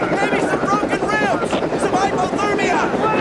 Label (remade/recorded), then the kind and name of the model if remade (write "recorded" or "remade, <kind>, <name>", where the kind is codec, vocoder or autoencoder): recorded